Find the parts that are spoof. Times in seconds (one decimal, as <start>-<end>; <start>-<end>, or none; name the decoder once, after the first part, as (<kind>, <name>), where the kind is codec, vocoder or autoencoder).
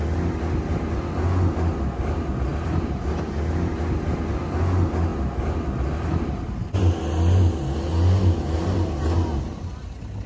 none